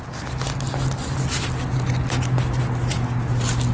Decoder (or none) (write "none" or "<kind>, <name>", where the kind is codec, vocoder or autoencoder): none